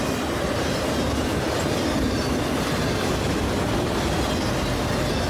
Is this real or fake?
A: real